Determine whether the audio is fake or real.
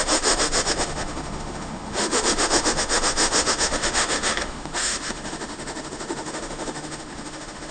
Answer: fake